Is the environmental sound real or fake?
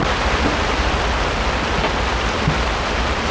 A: real